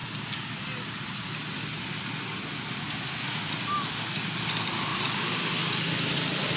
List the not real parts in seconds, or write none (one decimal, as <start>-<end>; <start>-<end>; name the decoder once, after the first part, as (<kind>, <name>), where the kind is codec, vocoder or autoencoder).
none